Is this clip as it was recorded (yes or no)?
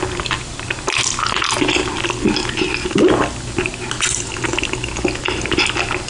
yes